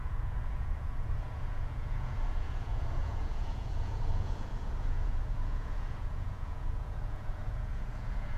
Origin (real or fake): fake